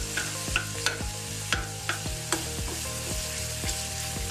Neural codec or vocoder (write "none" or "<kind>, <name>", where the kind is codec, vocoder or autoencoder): none